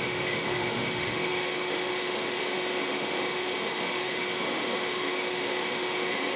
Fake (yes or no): yes